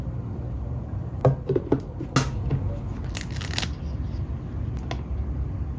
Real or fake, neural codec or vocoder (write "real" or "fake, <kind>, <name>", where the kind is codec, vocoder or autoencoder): real